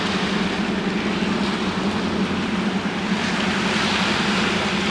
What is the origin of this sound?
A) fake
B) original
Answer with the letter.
B